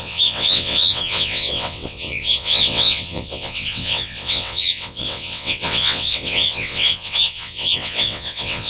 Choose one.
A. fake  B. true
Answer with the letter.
A